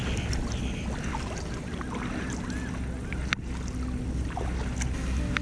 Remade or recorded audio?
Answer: recorded